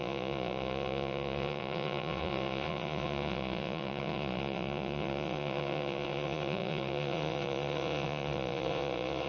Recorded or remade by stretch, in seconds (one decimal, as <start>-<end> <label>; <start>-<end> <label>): 0.0-9.3 remade